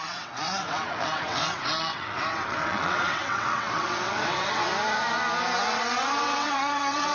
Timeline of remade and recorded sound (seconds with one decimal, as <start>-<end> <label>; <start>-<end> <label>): 0.0-4.7 remade; 4.7-5.6 recorded; 5.6-7.1 remade